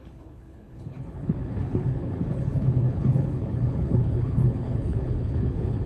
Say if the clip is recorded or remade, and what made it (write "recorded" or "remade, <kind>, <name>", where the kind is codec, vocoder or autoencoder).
remade, codec, HILCodec